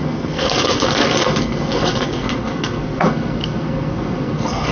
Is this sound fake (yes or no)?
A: yes